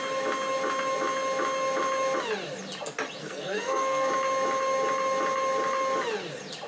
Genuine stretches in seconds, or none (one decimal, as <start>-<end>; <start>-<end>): 0.0-3.2; 4.1-6.7